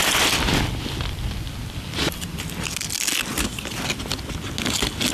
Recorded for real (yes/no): yes